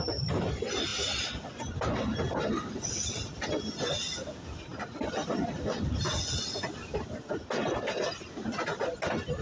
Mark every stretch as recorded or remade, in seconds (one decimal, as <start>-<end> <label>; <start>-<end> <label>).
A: 0.0-9.4 recorded

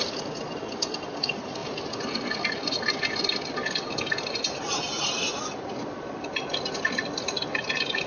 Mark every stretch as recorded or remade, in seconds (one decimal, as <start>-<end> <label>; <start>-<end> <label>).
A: 0.0-8.1 recorded

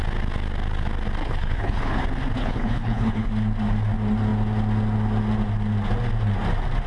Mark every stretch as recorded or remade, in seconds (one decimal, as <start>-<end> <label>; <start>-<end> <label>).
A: 0.0-1.2 recorded; 1.2-2.0 remade; 2.0-2.4 recorded; 2.4-3.3 remade; 3.3-6.9 recorded